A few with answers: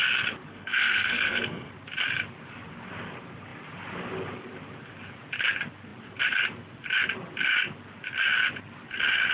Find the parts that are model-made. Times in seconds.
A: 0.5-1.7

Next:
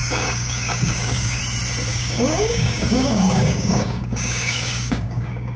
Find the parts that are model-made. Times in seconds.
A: 0.0-1.4; 1.9-5.6

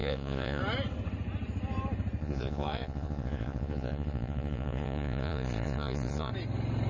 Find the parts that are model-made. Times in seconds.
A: 0.0-0.6; 2.2-6.3

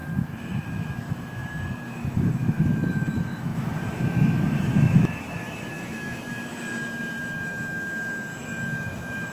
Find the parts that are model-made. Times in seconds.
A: 0.0-9.3

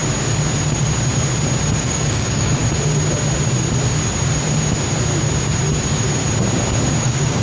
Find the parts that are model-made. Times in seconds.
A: 1.8-2.6; 7.0-7.4

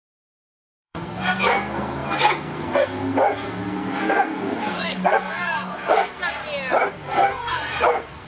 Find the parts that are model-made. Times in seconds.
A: 0.0-6.4; 6.9-8.3